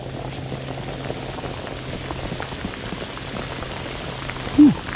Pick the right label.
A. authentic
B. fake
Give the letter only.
A